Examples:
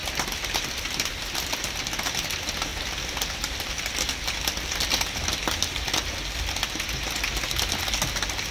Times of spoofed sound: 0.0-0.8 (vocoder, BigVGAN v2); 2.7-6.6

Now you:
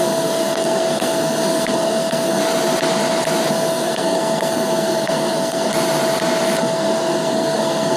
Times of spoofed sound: 0.0-2.4 (codec, SNAC); 3.5-5.7; 6.6-8.0

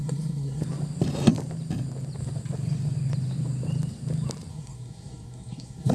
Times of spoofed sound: 0.0-0.6 (codec, SNAC); 4.5-5.9

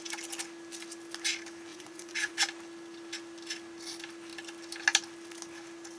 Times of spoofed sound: 1.7-2.3 (vocoder, Vocos)

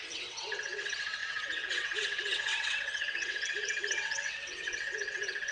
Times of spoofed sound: 0.0-5.5 (vocoder, WaveNeXt)

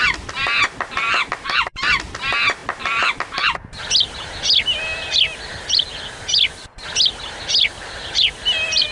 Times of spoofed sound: none

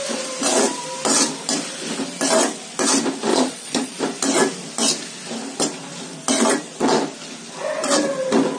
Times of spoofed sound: 3.3-4.0 (vocoder, Vocos)